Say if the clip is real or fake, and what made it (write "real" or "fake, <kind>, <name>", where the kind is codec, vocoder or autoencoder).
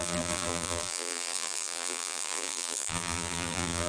fake, vocoder, BigVGAN v2